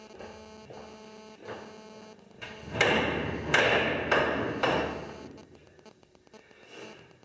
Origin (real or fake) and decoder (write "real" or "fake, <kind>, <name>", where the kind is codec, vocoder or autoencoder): real